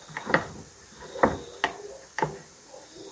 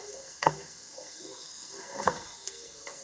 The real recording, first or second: first